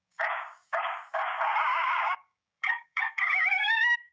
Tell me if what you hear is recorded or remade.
remade